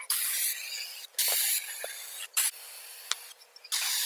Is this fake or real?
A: real